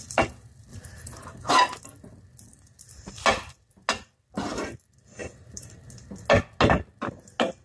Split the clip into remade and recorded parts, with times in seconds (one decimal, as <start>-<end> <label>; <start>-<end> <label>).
0.0-0.7 recorded; 0.7-1.5 remade; 1.5-5.2 recorded; 5.2-5.8 remade; 5.8-7.6 recorded